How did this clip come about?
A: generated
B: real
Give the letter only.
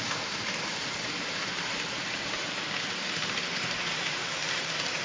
A